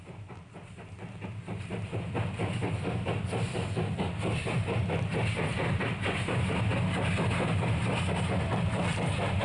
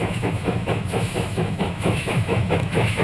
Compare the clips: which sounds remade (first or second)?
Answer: second